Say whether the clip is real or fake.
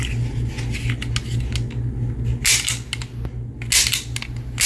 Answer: real